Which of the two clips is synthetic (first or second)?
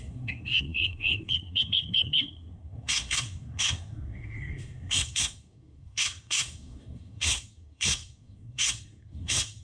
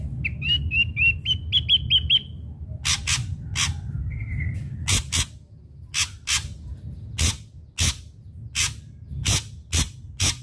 first